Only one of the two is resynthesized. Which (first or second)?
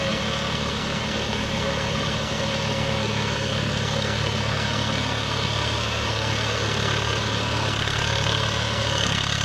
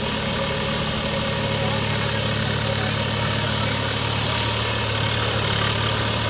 first